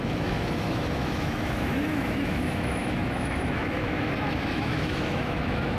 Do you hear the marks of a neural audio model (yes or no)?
yes